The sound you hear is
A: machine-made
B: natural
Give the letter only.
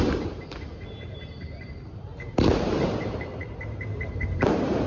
A